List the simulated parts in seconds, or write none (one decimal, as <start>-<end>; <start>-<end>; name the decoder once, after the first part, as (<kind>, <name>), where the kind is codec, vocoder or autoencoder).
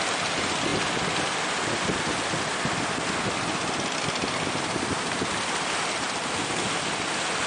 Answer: none